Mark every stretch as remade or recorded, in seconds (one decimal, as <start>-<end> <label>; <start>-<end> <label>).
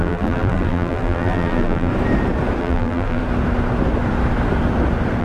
0.0-1.9 remade; 1.9-2.6 recorded; 2.6-3.2 remade; 3.2-5.2 recorded